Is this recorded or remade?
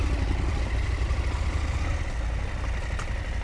recorded